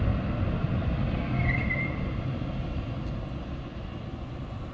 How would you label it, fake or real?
real